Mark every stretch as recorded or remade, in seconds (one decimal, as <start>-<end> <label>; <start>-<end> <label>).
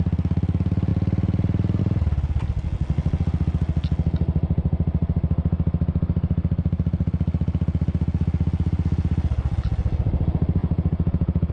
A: 0.0-10.6 recorded; 10.6-11.5 remade